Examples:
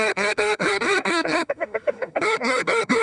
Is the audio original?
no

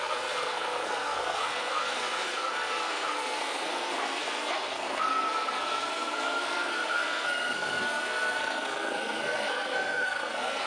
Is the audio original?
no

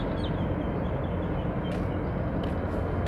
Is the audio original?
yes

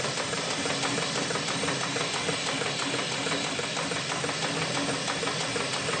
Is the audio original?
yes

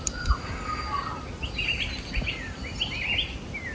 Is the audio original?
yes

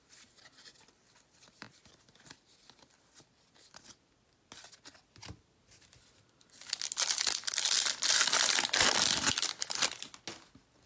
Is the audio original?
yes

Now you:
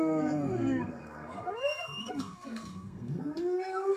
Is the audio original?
no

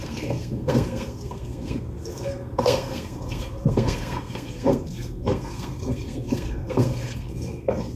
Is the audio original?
no